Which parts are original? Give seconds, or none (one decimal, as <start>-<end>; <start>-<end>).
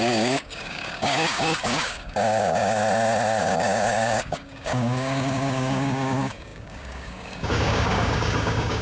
2.8-3.4